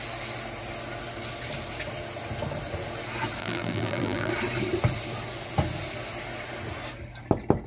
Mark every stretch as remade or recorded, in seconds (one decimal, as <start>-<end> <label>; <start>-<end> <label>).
0.0-3.4 recorded; 3.4-4.3 remade; 4.3-7.7 recorded